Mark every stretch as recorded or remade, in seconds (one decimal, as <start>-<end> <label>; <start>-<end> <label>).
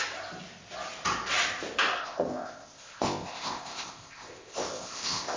0.0-2.0 recorded; 2.0-5.4 remade